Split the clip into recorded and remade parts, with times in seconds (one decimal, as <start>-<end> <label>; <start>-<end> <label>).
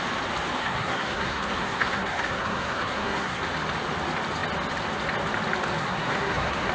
0.0-0.6 recorded; 0.6-3.4 remade; 3.4-5.8 recorded; 5.8-6.7 remade